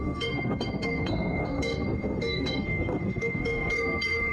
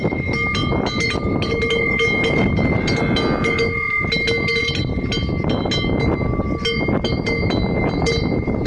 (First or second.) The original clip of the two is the second